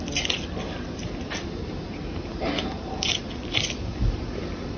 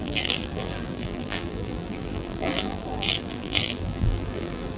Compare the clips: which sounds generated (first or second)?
second